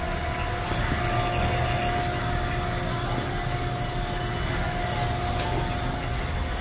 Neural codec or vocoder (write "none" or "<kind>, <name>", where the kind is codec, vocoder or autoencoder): none